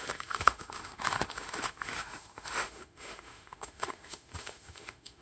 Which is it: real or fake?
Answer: fake